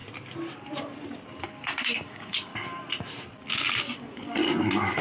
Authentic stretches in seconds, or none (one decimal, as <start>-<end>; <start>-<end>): 0.0-1.4; 2.5-3.8; 4.4-5.0